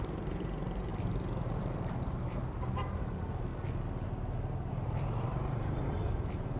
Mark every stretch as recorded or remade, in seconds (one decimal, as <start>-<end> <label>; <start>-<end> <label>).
0.0-0.9 remade; 0.9-1.6 recorded; 1.6-2.4 remade; 2.4-3.0 recorded; 3.0-3.5 remade; 3.5-4.7 recorded; 4.7-6.6 remade